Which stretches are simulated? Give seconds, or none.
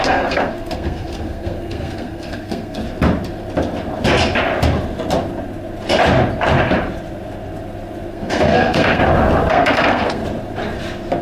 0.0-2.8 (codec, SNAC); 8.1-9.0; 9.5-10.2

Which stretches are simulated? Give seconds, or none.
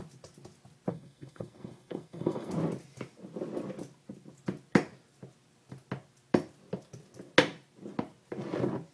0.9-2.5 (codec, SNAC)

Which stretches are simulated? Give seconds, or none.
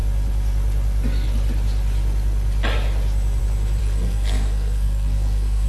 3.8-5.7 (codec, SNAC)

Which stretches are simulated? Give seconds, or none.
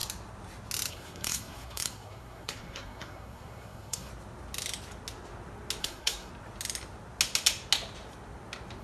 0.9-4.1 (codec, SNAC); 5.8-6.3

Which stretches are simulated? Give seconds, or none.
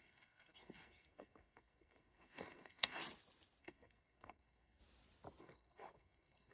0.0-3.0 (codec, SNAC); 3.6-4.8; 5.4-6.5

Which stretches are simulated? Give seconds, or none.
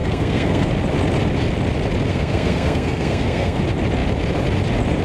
0.0-0.7 (codec, SNAC); 2.1-3.6